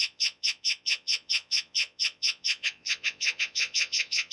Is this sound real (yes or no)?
no